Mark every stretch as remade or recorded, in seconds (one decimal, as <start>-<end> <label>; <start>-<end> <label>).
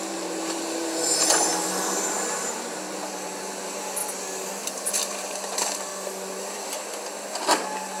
0.0-1.5 remade; 1.5-2.1 recorded; 2.1-4.0 remade; 4.0-4.7 recorded; 4.7-5.9 remade; 5.9-8.0 recorded